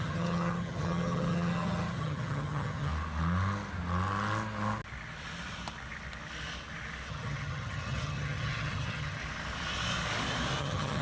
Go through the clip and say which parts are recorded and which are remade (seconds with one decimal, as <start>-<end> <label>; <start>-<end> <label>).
0.0-2.9 remade; 2.9-7.1 recorded; 7.1-9.2 remade; 9.2-10.6 recorded; 10.6-11.0 remade